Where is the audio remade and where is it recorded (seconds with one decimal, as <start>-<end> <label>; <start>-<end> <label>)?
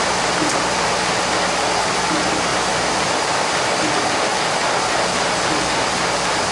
0.0-6.5 recorded